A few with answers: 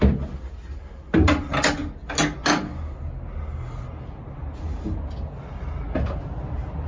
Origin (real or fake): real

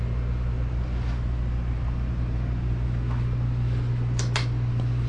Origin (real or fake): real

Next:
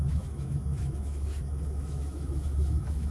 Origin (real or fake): fake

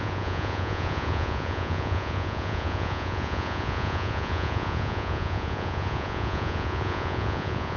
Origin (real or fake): fake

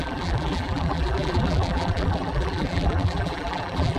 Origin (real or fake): fake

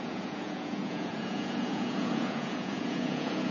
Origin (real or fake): fake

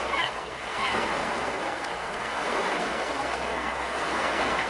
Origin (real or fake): fake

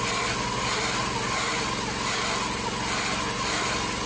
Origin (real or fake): real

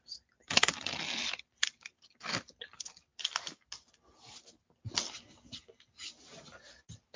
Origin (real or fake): real